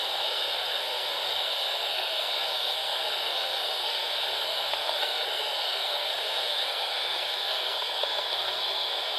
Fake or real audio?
fake